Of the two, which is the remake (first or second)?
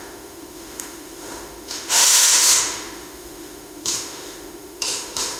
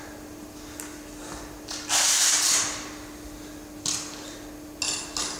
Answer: first